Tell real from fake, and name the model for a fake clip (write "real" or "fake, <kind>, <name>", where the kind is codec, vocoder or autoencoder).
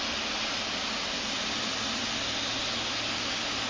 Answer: real